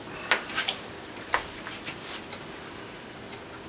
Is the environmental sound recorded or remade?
recorded